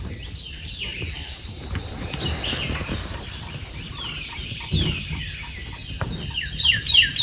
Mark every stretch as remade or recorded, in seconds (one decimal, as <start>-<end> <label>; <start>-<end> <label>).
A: 0.0-7.2 remade